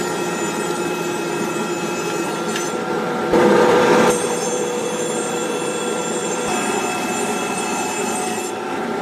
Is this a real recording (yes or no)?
no